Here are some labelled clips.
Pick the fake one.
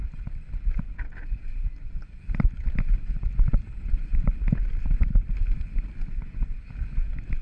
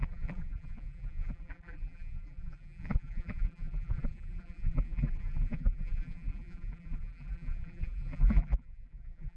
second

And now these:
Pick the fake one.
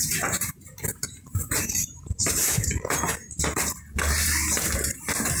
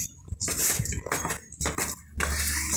first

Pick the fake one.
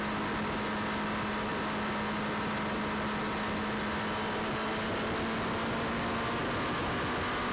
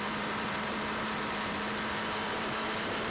second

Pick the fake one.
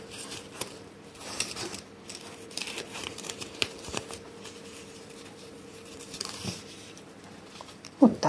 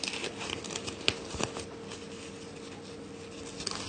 first